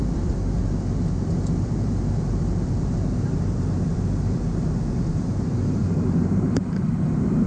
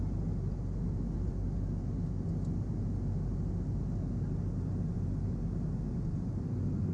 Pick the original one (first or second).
second